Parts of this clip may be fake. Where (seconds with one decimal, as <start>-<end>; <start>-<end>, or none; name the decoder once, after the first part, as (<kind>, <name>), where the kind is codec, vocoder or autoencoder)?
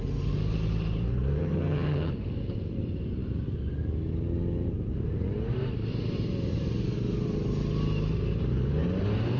1.4-2.1 (vocoder, HiFi-GAN)